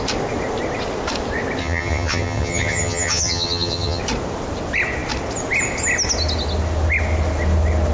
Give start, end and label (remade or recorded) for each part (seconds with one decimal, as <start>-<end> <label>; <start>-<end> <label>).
0.0-1.6 recorded; 1.6-4.0 remade; 4.0-7.9 recorded